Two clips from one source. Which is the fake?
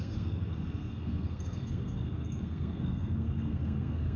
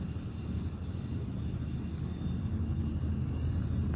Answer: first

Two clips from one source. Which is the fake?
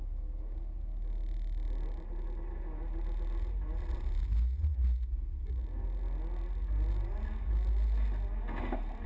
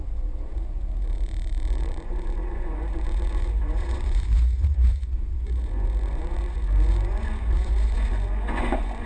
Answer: second